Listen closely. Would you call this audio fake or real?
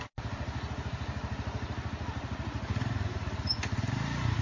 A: real